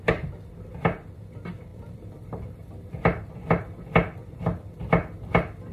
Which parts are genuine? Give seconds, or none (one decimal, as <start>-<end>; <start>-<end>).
0.0-1.7; 4.4-5.7

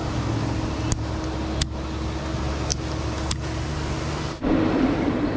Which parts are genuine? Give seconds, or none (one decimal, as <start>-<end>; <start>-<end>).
0.0-5.4

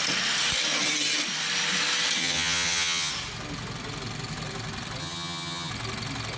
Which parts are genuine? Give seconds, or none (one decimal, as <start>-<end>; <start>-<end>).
0.0-2.2; 3.1-5.0; 5.7-6.4